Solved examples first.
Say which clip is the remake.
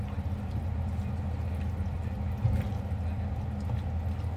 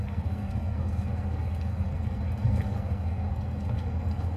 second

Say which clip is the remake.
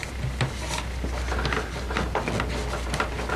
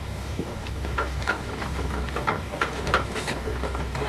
second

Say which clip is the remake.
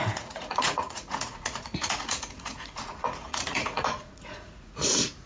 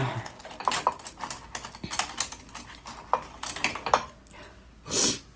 first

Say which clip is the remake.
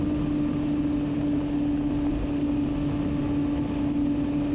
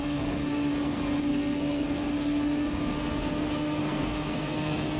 second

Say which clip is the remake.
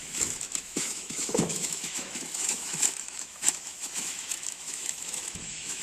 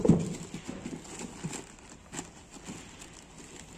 first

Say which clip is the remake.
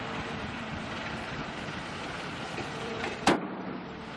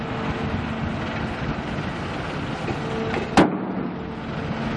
first